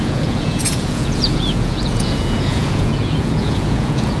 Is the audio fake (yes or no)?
yes